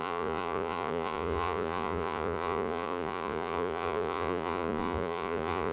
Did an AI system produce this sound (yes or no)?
yes